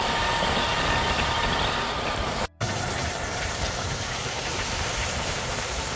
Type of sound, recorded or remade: remade